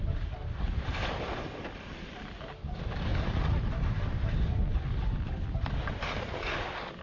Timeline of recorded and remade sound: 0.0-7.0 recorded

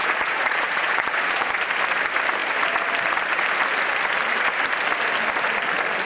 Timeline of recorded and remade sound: 0.0-1.6 remade; 1.6-6.1 recorded

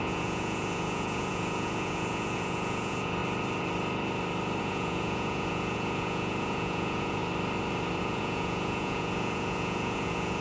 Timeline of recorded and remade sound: 0.0-3.2 remade; 3.2-4.6 recorded; 4.6-7.2 remade; 7.2-8.0 recorded; 8.0-10.4 remade

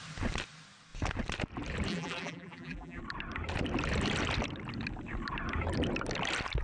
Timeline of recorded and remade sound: 0.0-1.9 recorded; 1.9-3.0 remade; 3.0-6.6 recorded

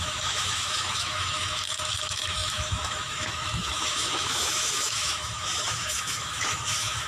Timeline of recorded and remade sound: 0.0-7.1 remade

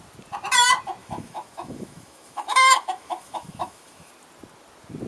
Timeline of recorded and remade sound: 0.0-1.0 recorded; 1.0-4.1 remade; 4.1-5.1 recorded

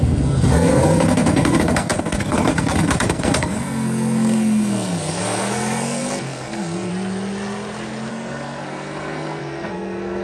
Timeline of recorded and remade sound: 0.0-6.9 remade; 6.9-8.1 recorded; 8.1-10.2 remade

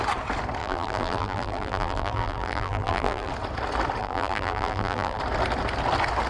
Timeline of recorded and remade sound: 0.0-0.6 recorded; 0.6-3.3 remade; 3.3-4.0 recorded; 4.0-5.2 remade; 5.2-6.3 recorded